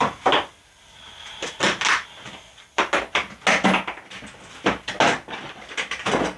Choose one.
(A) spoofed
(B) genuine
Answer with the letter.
B